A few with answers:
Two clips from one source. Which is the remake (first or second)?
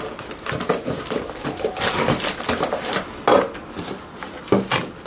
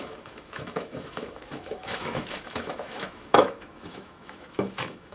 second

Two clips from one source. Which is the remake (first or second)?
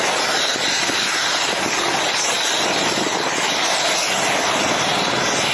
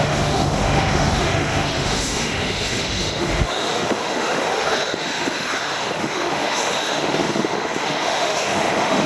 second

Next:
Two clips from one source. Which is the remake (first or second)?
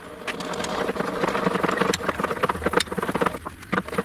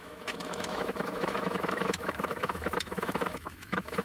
second